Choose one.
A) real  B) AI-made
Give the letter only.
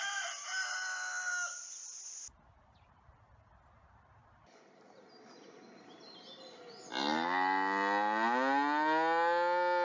A